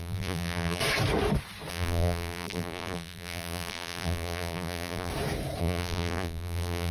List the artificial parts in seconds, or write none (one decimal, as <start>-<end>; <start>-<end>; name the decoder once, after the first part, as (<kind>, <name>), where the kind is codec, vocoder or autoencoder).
0.0-0.8 (vocoder, BigVGAN v2); 1.7-5.1; 5.6-6.9